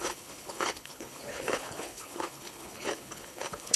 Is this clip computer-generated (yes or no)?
yes